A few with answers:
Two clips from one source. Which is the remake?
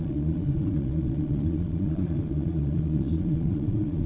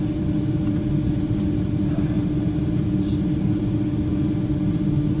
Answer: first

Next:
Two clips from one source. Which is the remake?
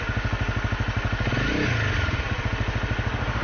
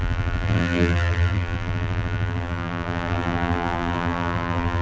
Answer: second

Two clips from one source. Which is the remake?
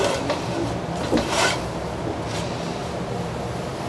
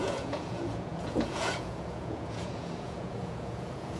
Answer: second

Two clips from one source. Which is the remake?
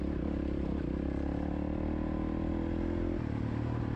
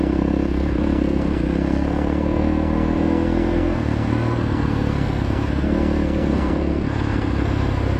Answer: second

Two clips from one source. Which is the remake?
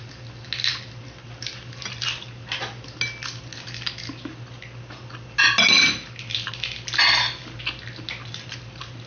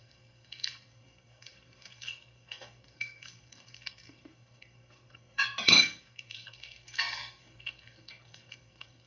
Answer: second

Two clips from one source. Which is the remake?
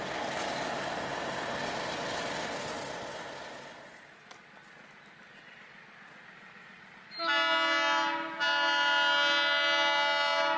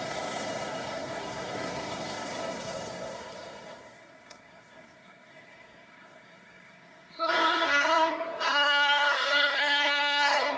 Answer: second